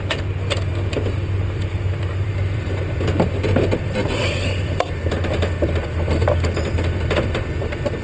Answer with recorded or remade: remade